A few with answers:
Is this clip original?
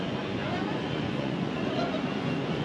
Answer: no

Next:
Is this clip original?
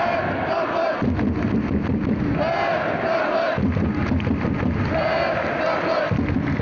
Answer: yes